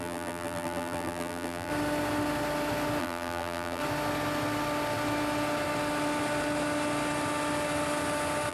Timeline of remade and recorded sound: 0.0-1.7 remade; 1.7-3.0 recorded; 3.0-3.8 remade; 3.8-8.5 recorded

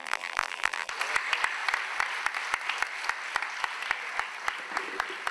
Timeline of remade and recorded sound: 0.0-0.9 remade; 0.9-5.3 recorded

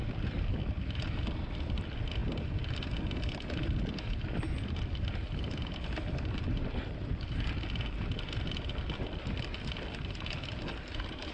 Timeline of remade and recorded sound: 0.0-11.3 recorded

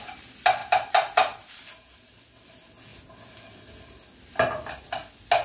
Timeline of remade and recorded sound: 0.0-0.6 recorded; 0.6-1.8 remade; 1.8-5.4 recorded